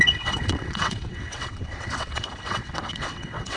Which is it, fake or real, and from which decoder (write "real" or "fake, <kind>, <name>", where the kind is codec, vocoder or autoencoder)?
fake, vocoder, WaveNeXt